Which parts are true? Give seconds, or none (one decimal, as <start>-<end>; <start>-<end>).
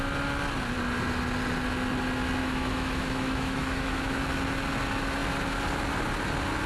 0.0-2.4; 4.2-6.7